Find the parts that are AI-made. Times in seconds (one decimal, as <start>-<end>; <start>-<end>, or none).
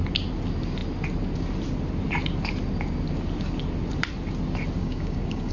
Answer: 4.8-5.5